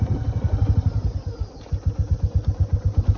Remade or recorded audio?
recorded